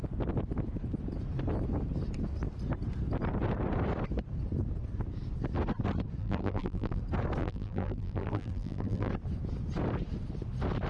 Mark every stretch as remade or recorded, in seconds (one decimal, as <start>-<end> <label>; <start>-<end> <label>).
0.0-6.2 recorded; 6.2-7.0 remade; 7.0-7.4 recorded; 7.4-9.1 remade; 9.1-10.9 recorded